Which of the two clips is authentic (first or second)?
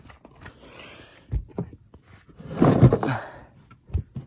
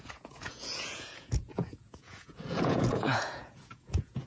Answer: first